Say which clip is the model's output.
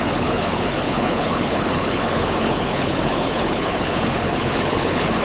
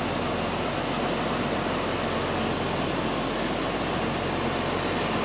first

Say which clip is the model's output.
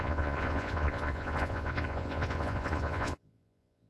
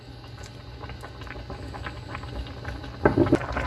first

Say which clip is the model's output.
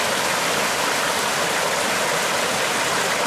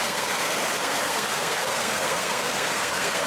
second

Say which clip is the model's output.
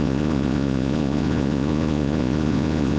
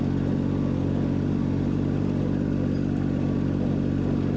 first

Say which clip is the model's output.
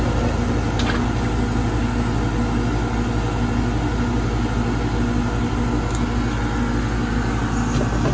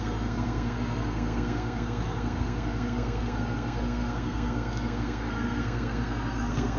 second